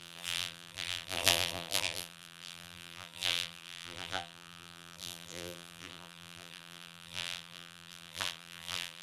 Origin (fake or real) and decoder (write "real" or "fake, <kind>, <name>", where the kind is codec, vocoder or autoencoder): fake, vocoder, BigVGAN v2